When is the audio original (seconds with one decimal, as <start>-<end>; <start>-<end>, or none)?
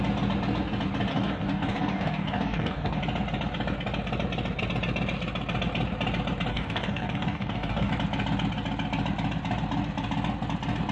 0.0-1.1; 3.0-6.5; 7.9-10.9